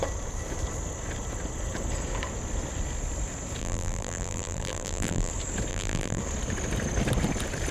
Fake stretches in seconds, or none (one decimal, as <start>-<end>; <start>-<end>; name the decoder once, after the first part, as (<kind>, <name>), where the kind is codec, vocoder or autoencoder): 3.6-5.3 (vocoder, BigVGAN v2); 5.7-6.2